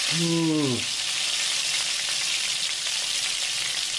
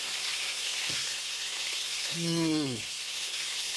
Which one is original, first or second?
first